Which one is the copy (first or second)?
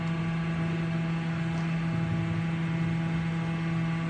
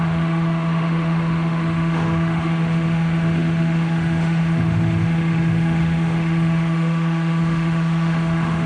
second